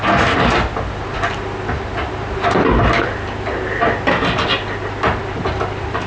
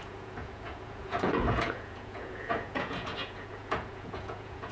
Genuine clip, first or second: first